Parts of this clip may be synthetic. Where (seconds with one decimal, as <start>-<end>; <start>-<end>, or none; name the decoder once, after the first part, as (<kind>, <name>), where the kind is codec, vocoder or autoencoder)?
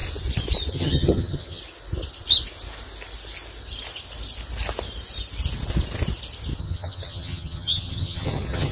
0.7-1.6 (vocoder, HiFi-GAN); 6.6-8.7